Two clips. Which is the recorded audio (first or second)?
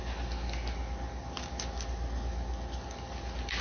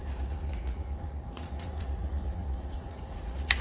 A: first